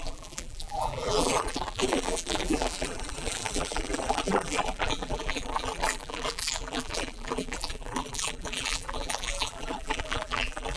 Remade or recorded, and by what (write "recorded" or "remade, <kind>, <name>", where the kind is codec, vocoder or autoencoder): remade, vocoder, BigVGAN v2